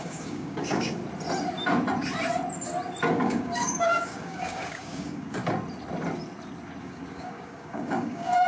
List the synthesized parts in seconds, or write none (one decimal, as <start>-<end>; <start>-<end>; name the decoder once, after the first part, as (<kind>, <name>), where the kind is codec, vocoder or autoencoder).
0.0-1.0 (codec, DAC); 3.1-5.4; 6.8-8.5